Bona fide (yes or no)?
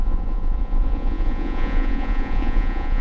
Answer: no